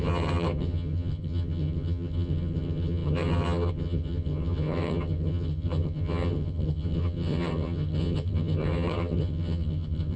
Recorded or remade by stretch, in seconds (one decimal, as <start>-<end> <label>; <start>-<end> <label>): 0.0-10.2 remade